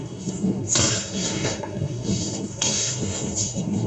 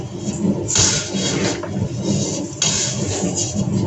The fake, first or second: first